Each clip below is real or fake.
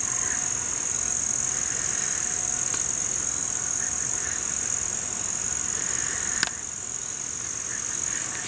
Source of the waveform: real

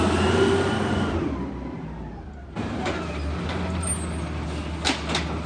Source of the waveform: real